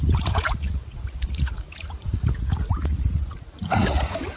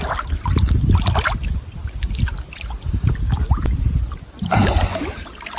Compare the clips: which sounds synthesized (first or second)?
first